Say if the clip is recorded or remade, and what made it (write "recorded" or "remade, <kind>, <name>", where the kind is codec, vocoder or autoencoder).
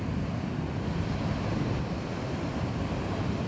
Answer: recorded